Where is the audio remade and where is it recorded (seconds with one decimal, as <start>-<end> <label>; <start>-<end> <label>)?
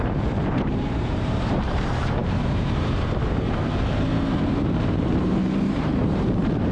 0.0-6.7 remade